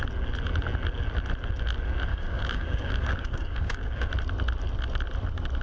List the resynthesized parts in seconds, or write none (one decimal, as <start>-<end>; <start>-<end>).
2.1-4.1